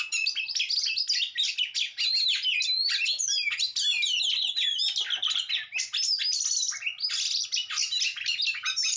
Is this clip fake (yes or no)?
no